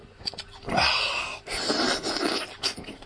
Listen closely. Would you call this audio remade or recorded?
recorded